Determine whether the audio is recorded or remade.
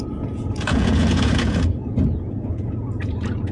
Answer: remade